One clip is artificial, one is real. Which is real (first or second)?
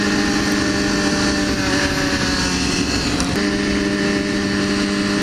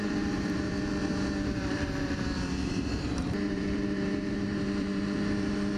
first